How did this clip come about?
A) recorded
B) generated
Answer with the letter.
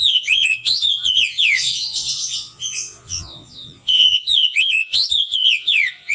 B